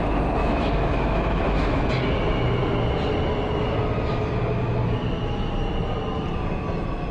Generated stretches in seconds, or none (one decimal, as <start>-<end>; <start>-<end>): 0.4-1.9